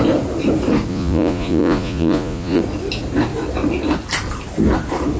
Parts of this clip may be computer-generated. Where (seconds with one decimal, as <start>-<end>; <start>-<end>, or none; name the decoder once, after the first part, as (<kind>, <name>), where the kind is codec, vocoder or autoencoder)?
0.9-2.6 (vocoder, Vocos)